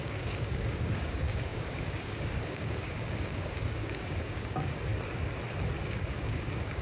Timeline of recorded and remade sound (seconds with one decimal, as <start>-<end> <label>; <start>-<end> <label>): 0.0-4.9 remade; 4.9-5.8 recorded; 5.8-6.8 remade